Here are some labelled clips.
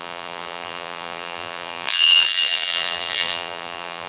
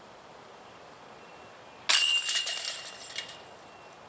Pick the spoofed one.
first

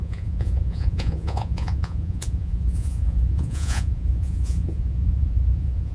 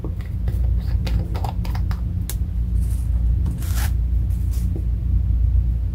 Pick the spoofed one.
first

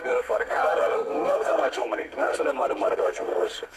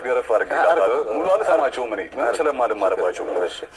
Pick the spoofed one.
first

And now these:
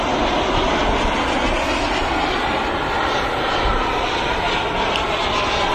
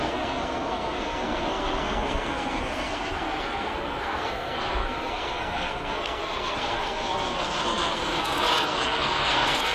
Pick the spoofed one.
second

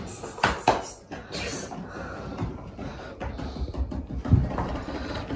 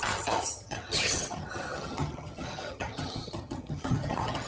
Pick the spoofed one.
second